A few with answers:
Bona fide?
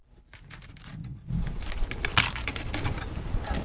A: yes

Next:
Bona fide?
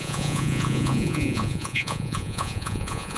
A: no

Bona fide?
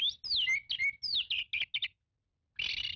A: yes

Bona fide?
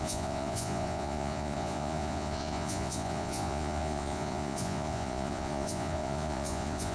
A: no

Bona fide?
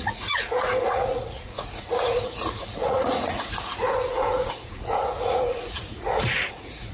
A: no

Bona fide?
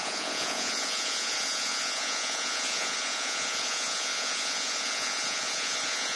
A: no